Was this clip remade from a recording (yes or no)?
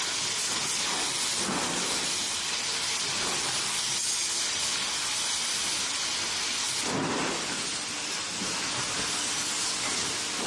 no